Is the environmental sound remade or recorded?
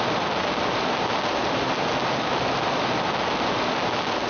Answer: recorded